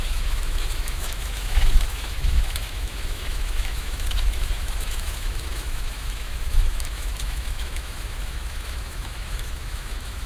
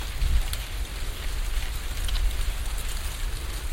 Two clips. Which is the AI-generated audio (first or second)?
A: first